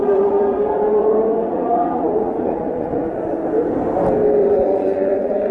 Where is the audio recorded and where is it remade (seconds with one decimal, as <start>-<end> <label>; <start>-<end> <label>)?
0.0-3.3 remade; 3.3-4.4 recorded; 4.4-5.5 remade